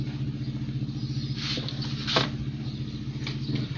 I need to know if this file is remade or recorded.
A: recorded